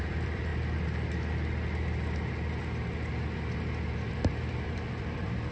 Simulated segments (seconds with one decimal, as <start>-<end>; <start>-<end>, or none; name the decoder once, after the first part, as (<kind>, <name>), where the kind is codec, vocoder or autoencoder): 0.0-0.5 (vocoder, BigVGAN v2); 3.8-5.5